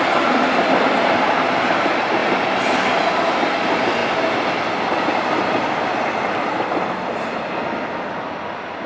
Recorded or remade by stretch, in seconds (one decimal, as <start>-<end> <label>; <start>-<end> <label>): 0.0-8.9 recorded